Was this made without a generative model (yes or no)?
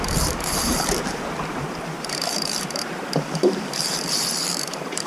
no